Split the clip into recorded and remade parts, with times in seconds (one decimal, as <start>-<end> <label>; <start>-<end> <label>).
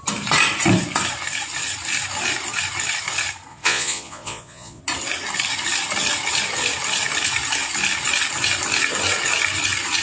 0.0-3.5 recorded; 3.5-4.8 remade; 4.8-10.0 recorded